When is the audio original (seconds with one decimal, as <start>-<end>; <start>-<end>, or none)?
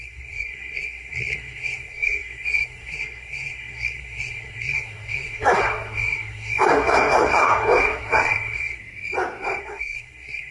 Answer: 8.8-9.6